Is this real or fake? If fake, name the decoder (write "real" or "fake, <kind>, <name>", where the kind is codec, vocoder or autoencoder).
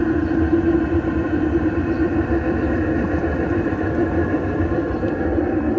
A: fake, vocoder, BigVGAN v2